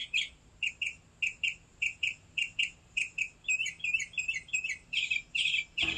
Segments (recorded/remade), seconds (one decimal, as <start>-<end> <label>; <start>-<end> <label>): 0.0-0.7 remade; 0.7-1.7 recorded; 1.7-3.2 remade; 3.2-3.6 recorded; 3.6-6.0 remade